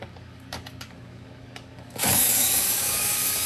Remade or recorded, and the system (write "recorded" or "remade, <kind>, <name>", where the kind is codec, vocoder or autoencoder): remade, codec, DAC